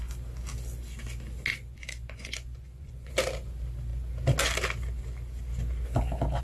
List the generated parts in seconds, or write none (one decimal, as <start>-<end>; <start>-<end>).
1.5-3.1